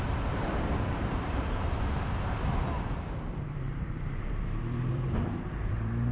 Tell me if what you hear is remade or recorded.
remade